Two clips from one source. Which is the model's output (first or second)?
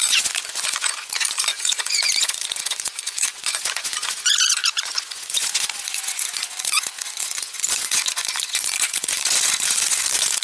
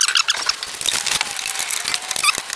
first